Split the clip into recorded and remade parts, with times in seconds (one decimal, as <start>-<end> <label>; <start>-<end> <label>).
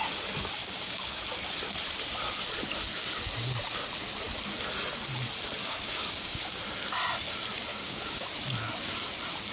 0.0-0.6 recorded; 0.6-1.2 remade; 1.2-5.6 recorded; 5.6-6.4 remade; 6.4-7.7 recorded; 7.7-8.3 remade; 8.3-9.5 recorded